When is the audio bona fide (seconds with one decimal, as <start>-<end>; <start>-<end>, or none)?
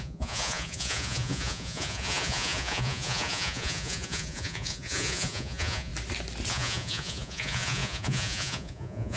5.9-6.5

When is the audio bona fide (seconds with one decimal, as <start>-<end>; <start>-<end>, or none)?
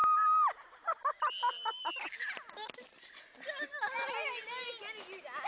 0.0-5.5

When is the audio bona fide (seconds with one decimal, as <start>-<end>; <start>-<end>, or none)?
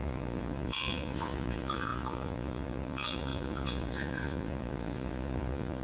none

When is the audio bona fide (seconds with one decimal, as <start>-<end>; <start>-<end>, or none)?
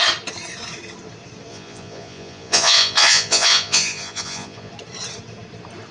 0.0-1.5; 4.7-5.9